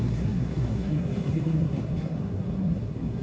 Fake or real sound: fake